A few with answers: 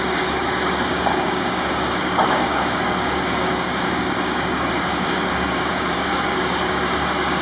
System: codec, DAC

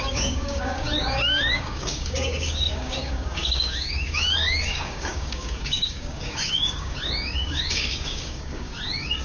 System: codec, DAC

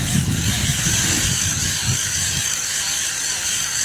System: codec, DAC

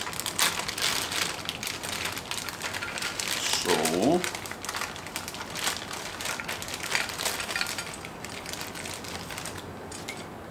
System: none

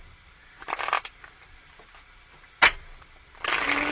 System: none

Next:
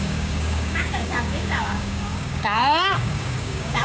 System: codec, DAC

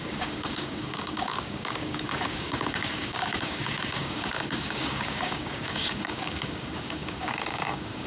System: codec, DAC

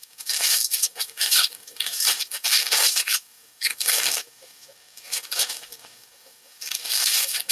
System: codec, DAC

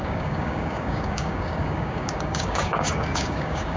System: codec, DAC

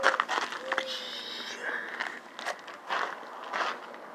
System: none